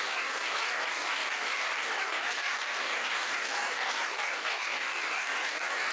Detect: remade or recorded remade